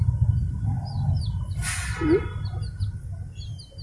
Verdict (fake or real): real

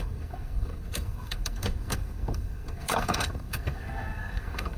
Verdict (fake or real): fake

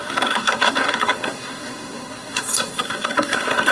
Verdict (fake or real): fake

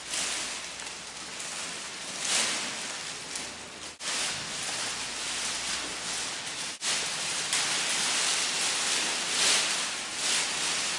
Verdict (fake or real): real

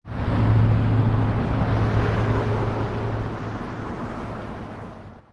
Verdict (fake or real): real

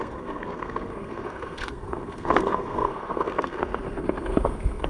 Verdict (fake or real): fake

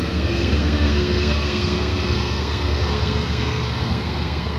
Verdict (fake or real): fake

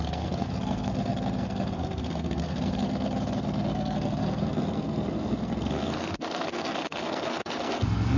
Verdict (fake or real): fake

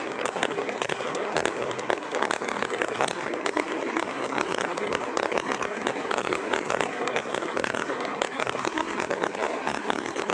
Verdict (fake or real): fake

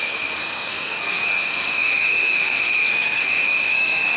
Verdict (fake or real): fake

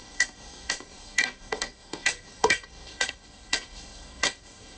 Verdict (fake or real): fake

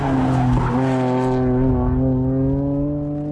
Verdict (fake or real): real